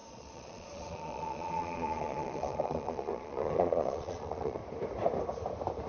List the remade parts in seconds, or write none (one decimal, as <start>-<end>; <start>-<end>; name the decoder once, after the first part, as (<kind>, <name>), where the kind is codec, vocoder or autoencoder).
0.0-4.6 (vocoder, Vocos)